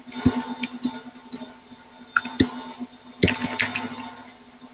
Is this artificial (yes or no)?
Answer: no